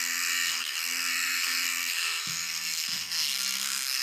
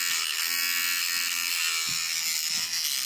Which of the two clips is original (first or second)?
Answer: second